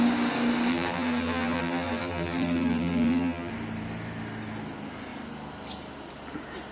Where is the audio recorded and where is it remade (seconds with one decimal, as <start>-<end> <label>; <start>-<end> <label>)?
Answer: 0.0-0.7 recorded; 0.7-3.5 remade; 3.5-6.7 recorded